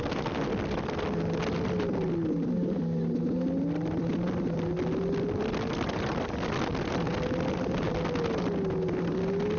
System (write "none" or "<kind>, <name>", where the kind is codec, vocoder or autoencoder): none